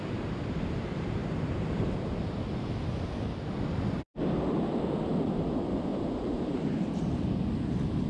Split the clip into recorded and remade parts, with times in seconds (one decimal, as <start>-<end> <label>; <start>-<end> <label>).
0.0-5.9 recorded; 5.9-7.0 remade; 7.0-8.1 recorded